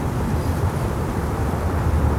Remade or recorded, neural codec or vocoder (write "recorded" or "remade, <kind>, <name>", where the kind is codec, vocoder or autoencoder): remade, vocoder, BigVGAN v2